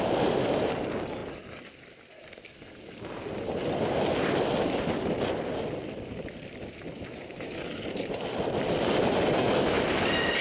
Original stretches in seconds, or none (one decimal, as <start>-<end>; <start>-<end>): 0.0-9.4; 10.0-10.4